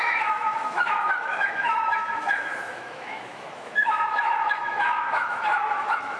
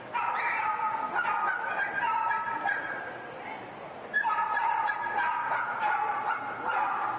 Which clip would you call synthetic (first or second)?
first